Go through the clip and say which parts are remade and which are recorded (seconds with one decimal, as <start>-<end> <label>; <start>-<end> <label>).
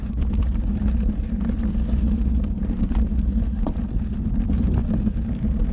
0.0-5.7 recorded